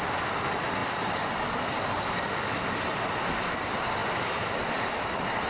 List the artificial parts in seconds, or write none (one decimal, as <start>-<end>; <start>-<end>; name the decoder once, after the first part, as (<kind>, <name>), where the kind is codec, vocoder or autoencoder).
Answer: none